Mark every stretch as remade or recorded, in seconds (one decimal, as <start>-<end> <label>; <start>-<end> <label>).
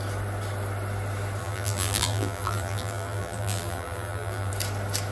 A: 0.0-1.4 recorded; 1.4-4.5 remade; 4.5-5.1 recorded